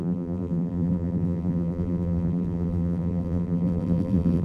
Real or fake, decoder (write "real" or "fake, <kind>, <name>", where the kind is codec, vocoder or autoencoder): fake, vocoder, BigVGAN v2